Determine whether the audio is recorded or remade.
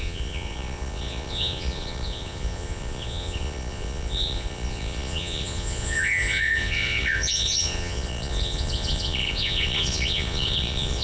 remade